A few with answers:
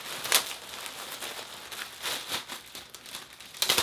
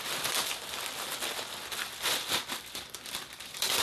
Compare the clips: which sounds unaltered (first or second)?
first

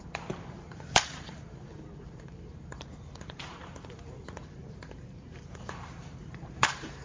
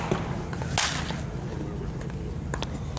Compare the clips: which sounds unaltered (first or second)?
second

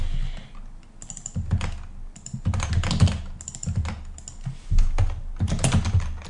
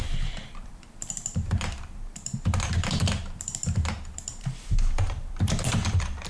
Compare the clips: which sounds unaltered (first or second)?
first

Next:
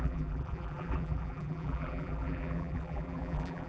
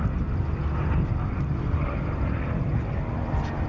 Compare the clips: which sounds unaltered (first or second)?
second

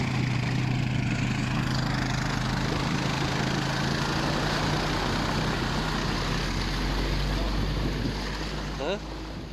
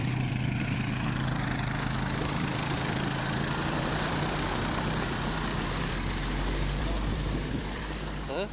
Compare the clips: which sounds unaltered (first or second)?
first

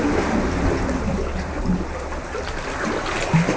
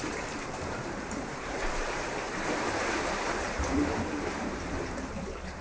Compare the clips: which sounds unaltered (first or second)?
first